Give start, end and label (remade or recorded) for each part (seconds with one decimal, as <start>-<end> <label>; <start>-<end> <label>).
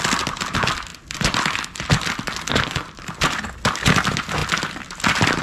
0.0-5.4 recorded